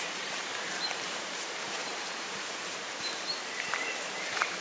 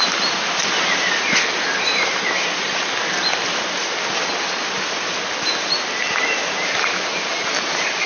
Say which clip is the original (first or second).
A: second